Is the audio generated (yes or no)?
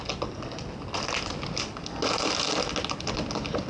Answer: no